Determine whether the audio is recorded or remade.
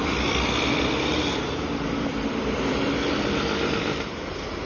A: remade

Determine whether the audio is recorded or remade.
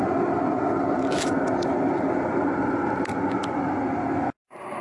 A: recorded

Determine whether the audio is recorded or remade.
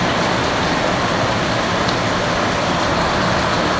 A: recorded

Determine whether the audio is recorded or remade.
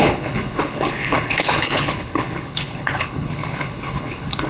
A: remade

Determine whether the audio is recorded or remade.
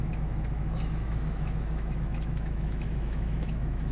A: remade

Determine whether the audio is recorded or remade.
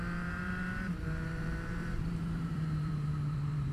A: remade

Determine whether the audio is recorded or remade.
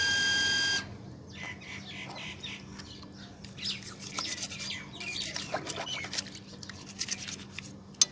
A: recorded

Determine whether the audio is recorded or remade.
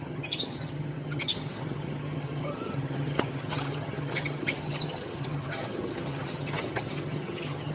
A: remade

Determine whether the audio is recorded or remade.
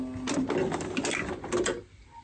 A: recorded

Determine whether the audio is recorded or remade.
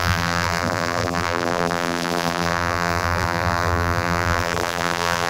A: remade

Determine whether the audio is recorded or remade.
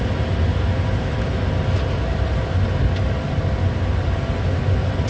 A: recorded